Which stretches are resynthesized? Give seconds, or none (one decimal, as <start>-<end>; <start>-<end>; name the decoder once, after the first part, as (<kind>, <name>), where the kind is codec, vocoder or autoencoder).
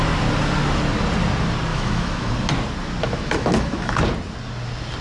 1.7-2.3 (autoencoder, DAC-VAE); 3.0-4.0